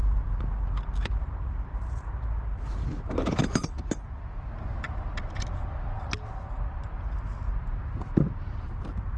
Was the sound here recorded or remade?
recorded